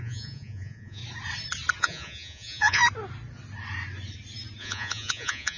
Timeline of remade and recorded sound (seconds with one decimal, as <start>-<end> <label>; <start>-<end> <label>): 0.0-1.0 remade; 1.0-1.8 recorded; 1.8-2.8 remade; 2.8-4.6 recorded; 4.6-5.6 remade